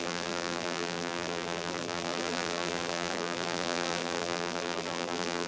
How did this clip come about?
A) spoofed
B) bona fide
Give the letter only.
A